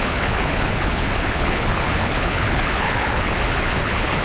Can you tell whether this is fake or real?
fake